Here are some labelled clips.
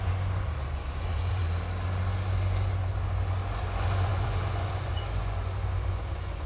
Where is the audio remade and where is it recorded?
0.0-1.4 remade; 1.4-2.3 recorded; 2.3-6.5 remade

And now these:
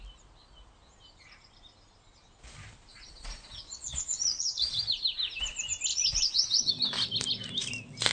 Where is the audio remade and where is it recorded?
0.0-2.9 recorded; 2.9-4.8 remade; 4.8-5.9 recorded; 5.9-6.7 remade; 6.7-8.1 recorded

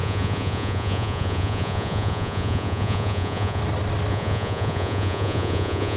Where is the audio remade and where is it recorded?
0.0-3.6 remade; 3.6-4.1 recorded; 4.1-6.0 remade

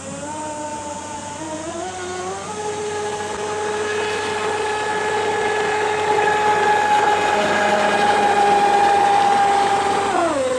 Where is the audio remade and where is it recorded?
0.0-0.7 recorded; 0.7-1.7 remade; 1.7-10.6 recorded

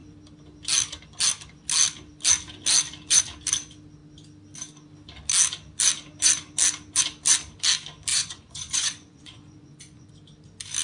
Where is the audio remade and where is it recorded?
0.0-8.1 recorded; 8.1-10.1 remade; 10.1-10.8 recorded